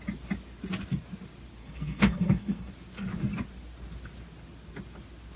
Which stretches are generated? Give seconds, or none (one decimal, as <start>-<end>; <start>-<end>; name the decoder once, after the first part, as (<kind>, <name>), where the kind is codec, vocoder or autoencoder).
1.6-2.7 (codec, SNAC)